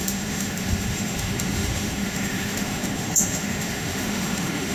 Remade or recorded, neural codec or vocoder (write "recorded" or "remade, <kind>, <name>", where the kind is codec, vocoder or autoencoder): remade, autoencoder, DAC-VAE